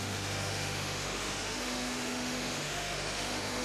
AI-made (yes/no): yes